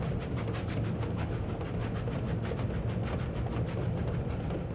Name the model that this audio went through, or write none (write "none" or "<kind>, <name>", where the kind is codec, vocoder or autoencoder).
none